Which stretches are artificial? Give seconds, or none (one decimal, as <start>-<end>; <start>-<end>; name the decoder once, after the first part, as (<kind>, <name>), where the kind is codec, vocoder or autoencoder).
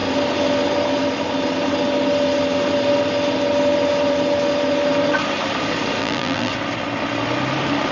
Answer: 6.0-6.5 (vocoder, BigVGAN v2)